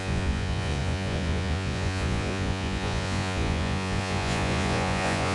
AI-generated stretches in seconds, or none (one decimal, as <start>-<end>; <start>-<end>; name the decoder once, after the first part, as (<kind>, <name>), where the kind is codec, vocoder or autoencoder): 0.0-5.3 (vocoder, Vocos)